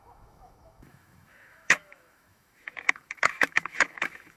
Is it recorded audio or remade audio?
remade